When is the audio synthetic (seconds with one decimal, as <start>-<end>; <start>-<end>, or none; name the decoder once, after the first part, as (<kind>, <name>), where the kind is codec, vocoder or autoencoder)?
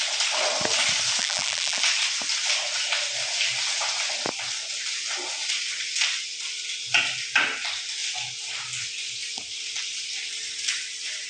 1.2-1.8 (vocoder, BigVGAN v2)